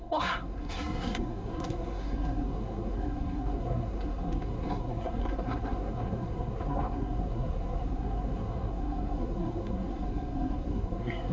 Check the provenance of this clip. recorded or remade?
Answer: remade